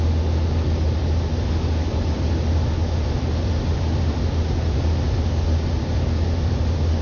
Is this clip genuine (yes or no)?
yes